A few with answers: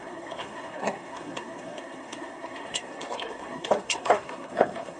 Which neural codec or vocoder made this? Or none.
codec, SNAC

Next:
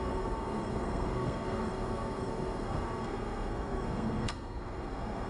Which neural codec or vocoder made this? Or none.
codec, SNAC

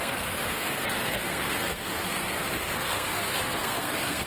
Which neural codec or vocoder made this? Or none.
codec, SNAC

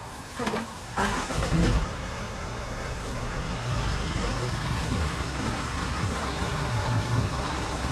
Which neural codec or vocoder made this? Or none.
codec, SNAC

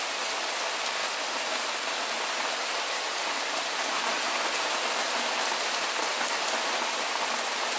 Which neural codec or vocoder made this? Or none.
none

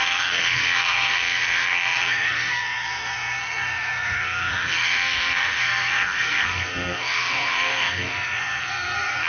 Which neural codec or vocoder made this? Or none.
codec, SNAC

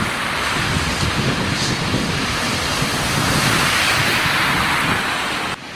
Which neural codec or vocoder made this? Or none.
none